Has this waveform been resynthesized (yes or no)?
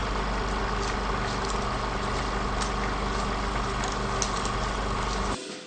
no